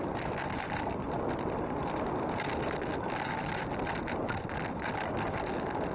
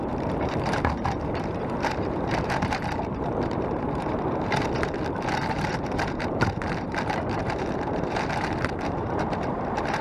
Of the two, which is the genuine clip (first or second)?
first